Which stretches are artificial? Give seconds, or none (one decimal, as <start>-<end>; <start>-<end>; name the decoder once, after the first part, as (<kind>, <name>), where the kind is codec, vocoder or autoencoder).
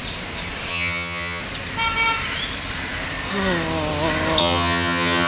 0.7-1.4 (vocoder, HiFi-GAN); 4.4-5.3